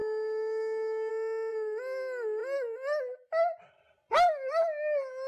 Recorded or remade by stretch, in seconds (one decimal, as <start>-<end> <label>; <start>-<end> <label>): 0.0-1.1 remade; 1.1-5.3 recorded

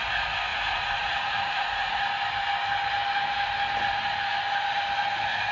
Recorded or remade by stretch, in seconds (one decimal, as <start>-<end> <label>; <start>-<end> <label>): 0.0-0.5 recorded; 0.5-2.0 remade; 2.0-5.5 recorded

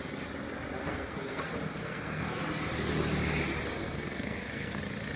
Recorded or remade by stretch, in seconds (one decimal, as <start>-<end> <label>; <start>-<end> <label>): 0.0-0.8 recorded; 0.8-1.4 remade; 1.4-1.8 recorded; 1.8-2.4 remade; 2.4-3.8 recorded; 3.8-4.8 remade; 4.8-5.2 recorded